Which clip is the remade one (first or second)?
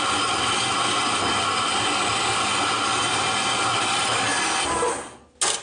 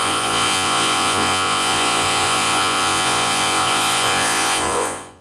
second